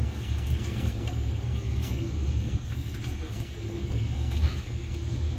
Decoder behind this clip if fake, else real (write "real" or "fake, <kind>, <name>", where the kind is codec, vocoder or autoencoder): fake, codec, SNAC